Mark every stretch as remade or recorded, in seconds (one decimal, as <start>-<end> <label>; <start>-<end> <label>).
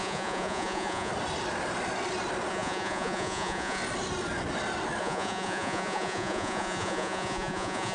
0.0-1.1 remade; 1.1-2.5 recorded; 2.5-3.8 remade; 3.8-5.0 recorded; 5.0-7.9 remade